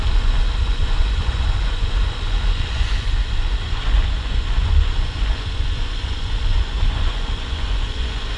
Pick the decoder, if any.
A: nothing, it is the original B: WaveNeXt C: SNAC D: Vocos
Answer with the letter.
D